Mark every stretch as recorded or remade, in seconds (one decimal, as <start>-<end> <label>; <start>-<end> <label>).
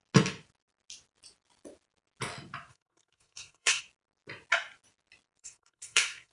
0.0-2.7 recorded; 2.7-3.8 remade; 3.8-5.4 recorded; 5.4-6.3 remade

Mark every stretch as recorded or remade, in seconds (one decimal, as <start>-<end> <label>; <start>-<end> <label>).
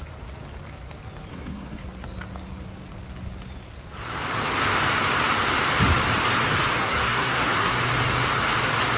0.0-1.3 recorded; 1.3-1.8 remade; 1.8-6.8 recorded; 6.8-7.8 remade; 7.8-9.0 recorded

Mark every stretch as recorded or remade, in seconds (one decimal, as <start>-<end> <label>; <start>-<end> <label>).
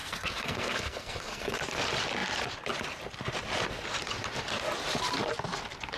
0.0-1.6 remade; 1.6-6.0 recorded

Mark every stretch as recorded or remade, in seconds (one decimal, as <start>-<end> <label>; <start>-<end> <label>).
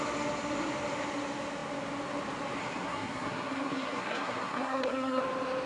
0.0-2.6 recorded; 2.6-5.2 remade; 5.2-5.7 recorded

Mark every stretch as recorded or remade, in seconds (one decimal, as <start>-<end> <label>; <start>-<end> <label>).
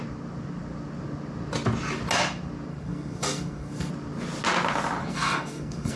0.0-2.7 recorded; 2.7-3.9 remade; 3.9-5.0 recorded; 5.0-6.0 remade